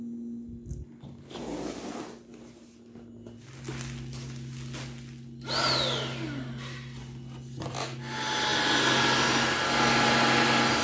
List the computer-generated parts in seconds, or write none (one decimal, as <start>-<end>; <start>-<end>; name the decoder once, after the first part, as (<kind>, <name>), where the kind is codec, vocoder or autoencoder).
none